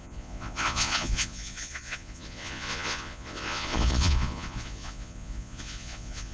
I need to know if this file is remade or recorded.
remade